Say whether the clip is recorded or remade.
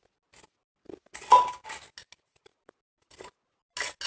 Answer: recorded